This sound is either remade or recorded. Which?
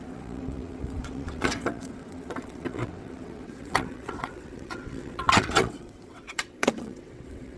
remade